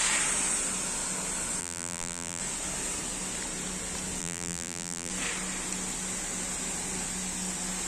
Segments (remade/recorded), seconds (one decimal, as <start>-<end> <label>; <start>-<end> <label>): 0.0-1.6 recorded; 1.6-2.4 remade; 2.4-4.2 recorded; 4.2-5.1 remade; 5.1-7.9 recorded